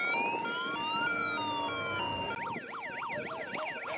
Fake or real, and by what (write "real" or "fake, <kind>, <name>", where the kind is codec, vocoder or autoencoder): real